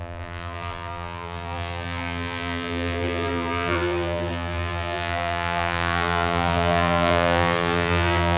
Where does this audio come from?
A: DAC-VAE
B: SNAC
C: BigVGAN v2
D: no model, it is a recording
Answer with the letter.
C